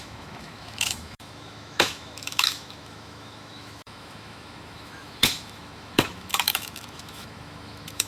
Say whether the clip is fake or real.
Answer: fake